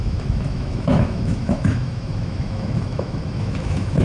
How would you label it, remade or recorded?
remade